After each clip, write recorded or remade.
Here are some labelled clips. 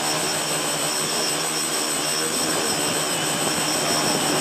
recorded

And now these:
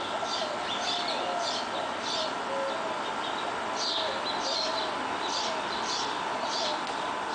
recorded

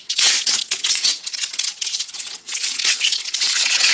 remade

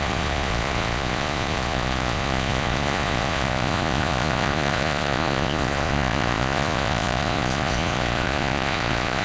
remade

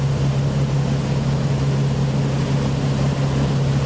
recorded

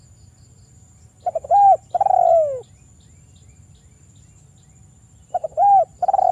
recorded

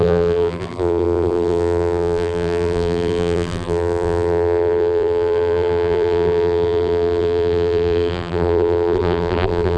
remade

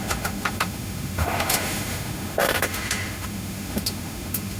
remade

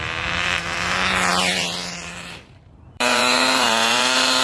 remade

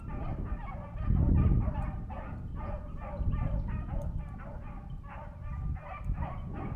recorded